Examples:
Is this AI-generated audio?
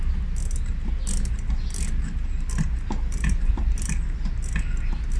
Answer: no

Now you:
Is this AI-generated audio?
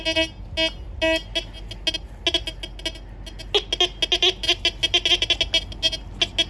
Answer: no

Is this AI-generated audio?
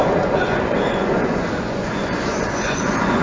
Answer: yes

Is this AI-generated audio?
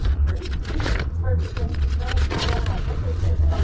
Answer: yes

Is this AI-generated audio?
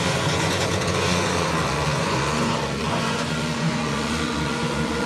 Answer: yes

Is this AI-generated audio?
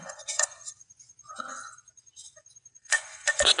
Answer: yes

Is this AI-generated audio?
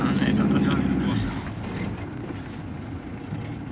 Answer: no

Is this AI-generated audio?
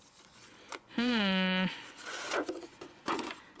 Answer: yes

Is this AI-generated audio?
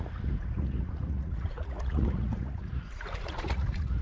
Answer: yes